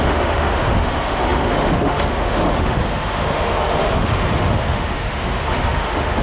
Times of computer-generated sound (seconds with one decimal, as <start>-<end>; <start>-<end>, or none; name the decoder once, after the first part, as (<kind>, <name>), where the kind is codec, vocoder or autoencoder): 0.0-6.2 (autoencoder, DAC-VAE)